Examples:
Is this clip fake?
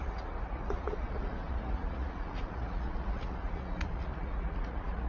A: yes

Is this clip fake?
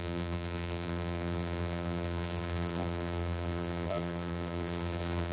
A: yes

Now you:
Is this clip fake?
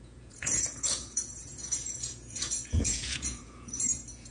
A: yes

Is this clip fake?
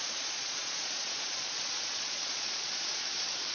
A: yes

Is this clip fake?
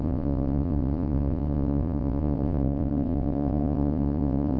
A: yes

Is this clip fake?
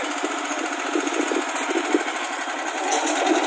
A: no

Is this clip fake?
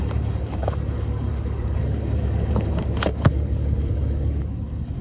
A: yes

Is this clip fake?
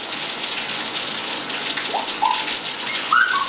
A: yes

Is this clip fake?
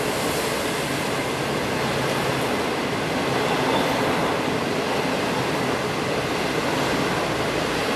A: no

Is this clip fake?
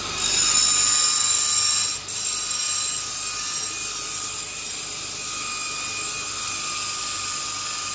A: no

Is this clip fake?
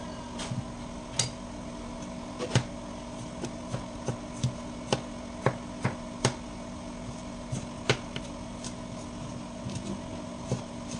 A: no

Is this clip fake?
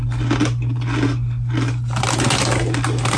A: no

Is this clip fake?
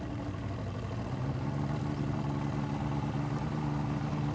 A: no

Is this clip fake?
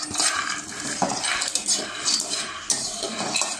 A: yes